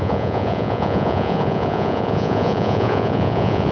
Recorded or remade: remade